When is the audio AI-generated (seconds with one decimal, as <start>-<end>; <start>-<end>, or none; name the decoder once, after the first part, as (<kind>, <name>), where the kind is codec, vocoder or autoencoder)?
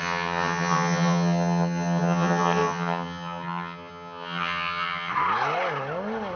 0.0-5.1 (vocoder, HiFi-GAN)